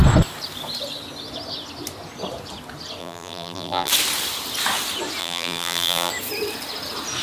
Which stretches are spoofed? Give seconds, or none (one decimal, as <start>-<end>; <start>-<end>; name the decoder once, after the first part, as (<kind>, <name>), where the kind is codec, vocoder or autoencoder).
3.0-3.9 (vocoder, BigVGAN v2); 5.2-6.1